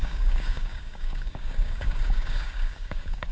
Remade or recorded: remade